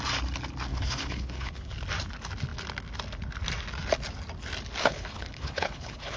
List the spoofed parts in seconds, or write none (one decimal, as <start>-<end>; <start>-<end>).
0.7-1.7; 4.8-6.2